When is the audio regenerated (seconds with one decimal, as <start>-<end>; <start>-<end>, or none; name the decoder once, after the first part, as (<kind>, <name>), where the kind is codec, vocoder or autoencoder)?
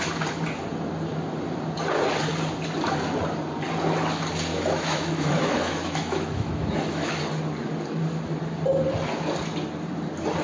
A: 4.5-7.2 (autoencoder, DAC-VAE)